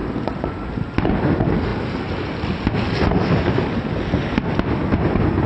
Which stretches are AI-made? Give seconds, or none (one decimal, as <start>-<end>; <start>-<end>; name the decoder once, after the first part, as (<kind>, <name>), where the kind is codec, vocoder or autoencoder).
none